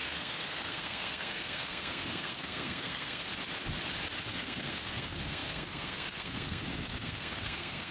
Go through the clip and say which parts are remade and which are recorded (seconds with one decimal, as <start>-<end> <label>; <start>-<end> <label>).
0.0-3.2 remade; 3.2-4.3 recorded; 4.3-7.9 remade